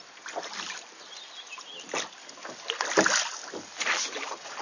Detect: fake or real real